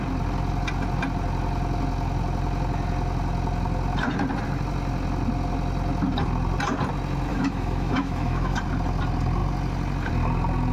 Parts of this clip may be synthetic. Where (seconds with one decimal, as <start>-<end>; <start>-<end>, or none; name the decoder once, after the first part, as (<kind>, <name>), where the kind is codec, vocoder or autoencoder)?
7.3-8.6 (autoencoder, DAC-VAE)